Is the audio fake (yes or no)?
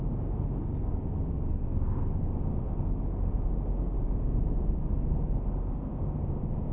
no